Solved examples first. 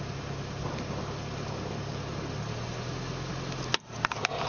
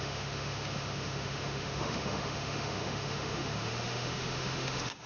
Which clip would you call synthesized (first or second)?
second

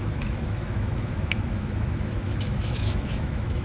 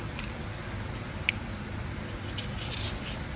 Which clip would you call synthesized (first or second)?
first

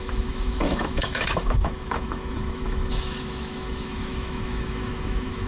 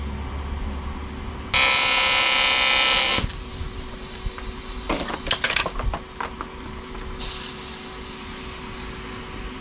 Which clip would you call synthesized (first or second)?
first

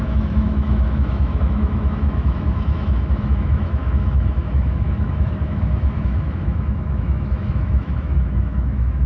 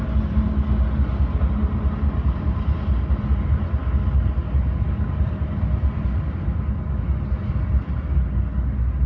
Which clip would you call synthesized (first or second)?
first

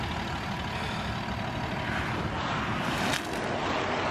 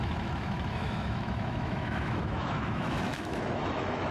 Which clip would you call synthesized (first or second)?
second